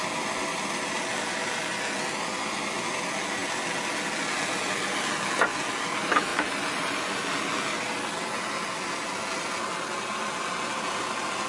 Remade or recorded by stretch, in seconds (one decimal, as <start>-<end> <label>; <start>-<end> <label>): 0.0-11.5 recorded